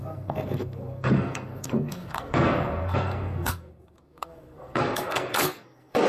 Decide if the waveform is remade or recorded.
remade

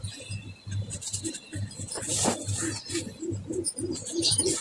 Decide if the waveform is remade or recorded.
recorded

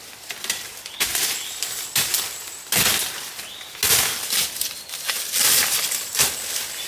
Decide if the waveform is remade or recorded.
recorded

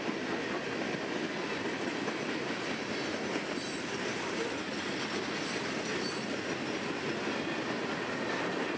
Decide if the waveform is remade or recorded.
recorded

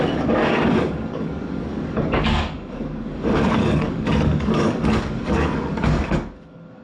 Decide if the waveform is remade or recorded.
remade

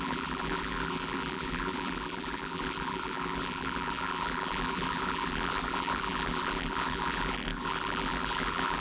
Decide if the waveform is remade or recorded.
remade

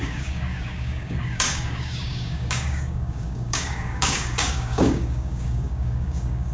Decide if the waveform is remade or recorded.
remade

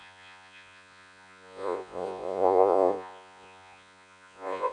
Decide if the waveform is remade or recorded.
remade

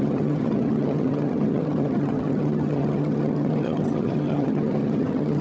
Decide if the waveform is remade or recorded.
remade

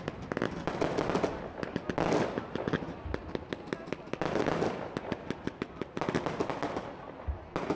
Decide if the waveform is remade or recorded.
recorded